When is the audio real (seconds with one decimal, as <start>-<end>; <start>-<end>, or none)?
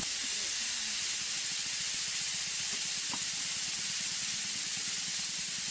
0.0-5.7